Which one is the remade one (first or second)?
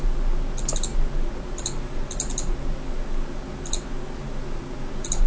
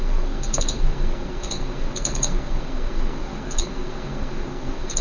second